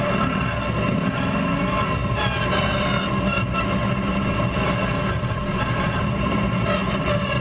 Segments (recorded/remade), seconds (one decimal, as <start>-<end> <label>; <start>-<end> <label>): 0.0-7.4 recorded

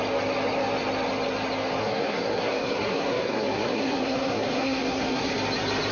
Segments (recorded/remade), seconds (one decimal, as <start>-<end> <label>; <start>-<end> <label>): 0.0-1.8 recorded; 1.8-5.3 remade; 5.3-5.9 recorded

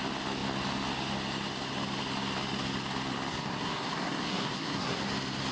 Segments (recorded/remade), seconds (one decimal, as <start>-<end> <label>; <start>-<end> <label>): 0.0-3.3 recorded; 3.3-5.0 remade; 5.0-5.5 recorded